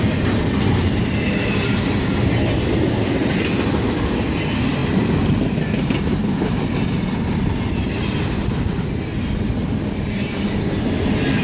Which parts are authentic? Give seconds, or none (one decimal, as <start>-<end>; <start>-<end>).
0.0-11.4